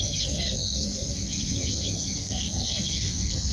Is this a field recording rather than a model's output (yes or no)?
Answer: no